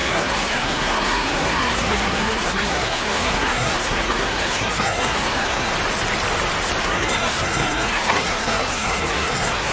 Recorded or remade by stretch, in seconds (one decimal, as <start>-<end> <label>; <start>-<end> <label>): 0.0-5.7 remade; 5.7-6.8 recorded; 6.8-9.7 remade